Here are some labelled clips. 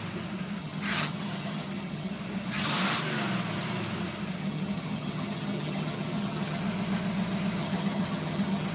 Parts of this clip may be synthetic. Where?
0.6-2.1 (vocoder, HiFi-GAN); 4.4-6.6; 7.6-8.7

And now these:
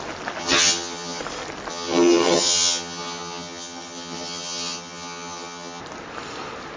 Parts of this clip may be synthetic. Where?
0.4-1.2 (vocoder, HiFi-GAN); 1.7-5.8

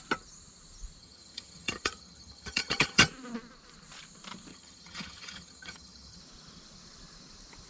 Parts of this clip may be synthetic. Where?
1.0-3.0 (vocoder, HiFi-GAN); 4.5-6.2

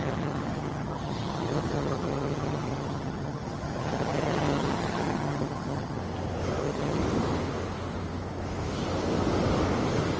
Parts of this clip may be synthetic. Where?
0.0-6.0 (vocoder, HiFi-GAN); 6.6-7.0

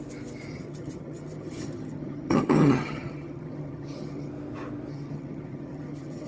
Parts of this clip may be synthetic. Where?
0.5-4.3 (vocoder, HiFi-GAN); 4.9-6.3

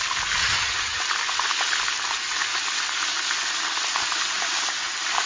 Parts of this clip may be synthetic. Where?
0.4-1.0 (vocoder, HiFi-GAN)

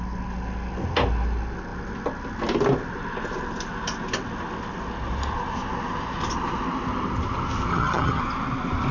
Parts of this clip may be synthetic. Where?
7.7-8.2 (vocoder, HiFi-GAN)

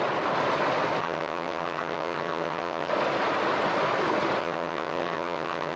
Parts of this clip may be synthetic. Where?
1.0-2.9 (vocoder, HiFi-GAN); 4.4-5.8